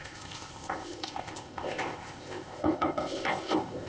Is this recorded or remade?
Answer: remade